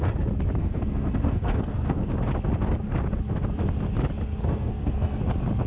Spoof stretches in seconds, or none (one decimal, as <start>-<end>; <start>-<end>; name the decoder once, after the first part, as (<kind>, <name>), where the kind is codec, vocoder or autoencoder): 0.6-2.1 (codec, SNAC); 4.4-5.2